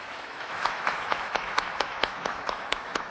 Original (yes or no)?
no